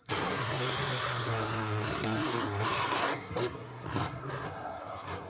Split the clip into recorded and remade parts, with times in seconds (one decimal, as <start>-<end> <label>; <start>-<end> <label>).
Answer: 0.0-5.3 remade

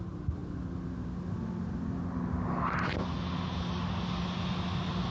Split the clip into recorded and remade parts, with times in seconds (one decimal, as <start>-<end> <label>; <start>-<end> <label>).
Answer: 0.0-5.1 recorded

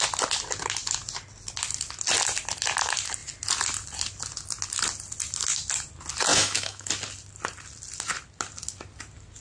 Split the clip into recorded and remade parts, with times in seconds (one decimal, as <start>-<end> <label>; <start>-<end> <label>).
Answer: 0.0-6.3 recorded; 6.3-6.9 remade; 6.9-9.4 recorded

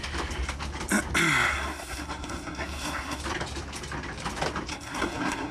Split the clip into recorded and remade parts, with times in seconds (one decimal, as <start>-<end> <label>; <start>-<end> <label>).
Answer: 0.0-1.5 recorded; 1.5-3.2 remade; 3.2-4.7 recorded; 4.7-5.5 remade

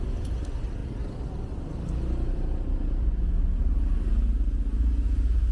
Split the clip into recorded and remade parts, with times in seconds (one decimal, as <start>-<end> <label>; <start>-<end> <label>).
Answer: 0.0-5.5 recorded